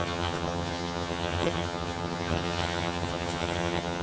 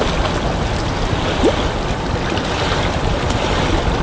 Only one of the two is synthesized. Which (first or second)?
first